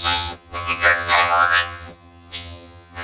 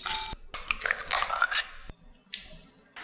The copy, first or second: first